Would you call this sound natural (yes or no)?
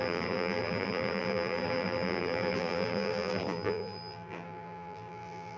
no